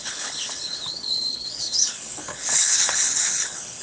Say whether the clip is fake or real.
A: fake